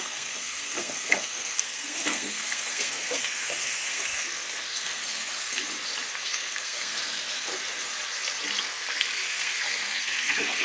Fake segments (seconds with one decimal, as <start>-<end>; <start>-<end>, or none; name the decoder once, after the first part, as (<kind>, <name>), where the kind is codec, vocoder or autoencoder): 0.0-5.6 (codec, SNAC); 6.2-7.5; 8.6-10.6

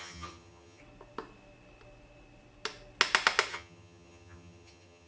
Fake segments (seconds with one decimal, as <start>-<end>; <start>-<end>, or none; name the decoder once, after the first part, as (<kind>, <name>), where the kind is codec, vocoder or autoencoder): 0.0-0.8 (vocoder, HiFi-GAN); 3.5-5.1

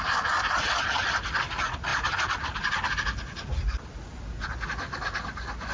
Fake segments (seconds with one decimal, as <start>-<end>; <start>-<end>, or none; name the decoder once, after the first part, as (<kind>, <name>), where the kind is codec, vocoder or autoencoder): none